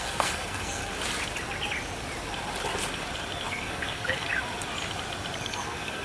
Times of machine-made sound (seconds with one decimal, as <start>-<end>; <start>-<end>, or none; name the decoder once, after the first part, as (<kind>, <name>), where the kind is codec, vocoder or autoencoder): 0.0-0.8 (codec, SNAC); 3.5-4.3; 5.4-6.0